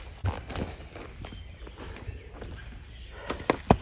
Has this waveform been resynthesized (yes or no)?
no